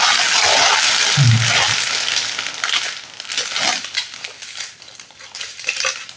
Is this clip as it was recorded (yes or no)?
yes